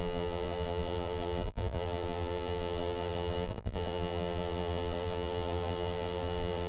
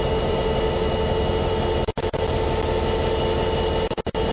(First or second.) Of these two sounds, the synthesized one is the first